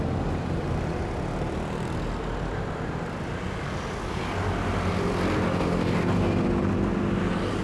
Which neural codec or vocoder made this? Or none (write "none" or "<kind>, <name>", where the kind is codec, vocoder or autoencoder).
none